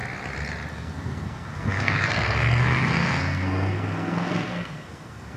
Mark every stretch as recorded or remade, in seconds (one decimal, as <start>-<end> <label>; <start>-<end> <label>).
0.0-0.7 recorded; 0.7-5.4 remade